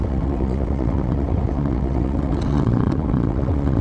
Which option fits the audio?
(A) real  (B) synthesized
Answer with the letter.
B